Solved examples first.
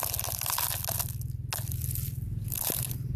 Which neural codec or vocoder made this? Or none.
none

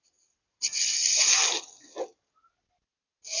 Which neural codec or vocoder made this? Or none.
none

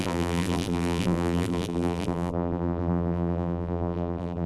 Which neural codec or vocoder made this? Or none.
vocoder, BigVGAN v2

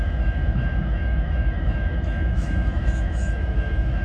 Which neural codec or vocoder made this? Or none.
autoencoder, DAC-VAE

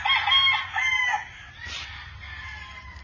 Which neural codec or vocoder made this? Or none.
none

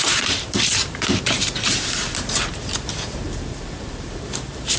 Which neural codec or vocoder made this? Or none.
vocoder, BigVGAN v2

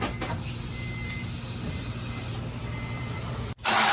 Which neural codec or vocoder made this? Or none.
none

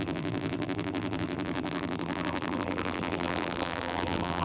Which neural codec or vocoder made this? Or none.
vocoder, BigVGAN v2